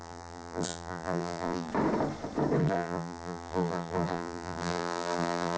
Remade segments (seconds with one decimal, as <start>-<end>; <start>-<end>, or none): 0.0-1.7; 2.6-5.6